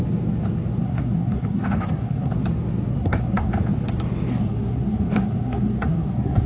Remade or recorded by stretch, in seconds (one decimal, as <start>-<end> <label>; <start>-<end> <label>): 0.0-0.8 recorded; 0.8-2.3 remade; 2.3-2.9 recorded; 2.9-3.5 remade; 3.5-4.3 recorded; 4.3-6.5 remade